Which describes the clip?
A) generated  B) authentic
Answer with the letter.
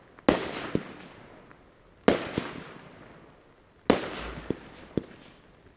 B